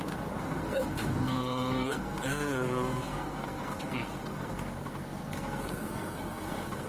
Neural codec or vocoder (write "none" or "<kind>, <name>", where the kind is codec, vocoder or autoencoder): codec, SNAC